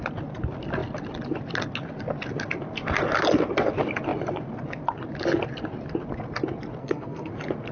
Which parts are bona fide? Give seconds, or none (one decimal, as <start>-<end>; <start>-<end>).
0.0-6.8; 7.3-7.7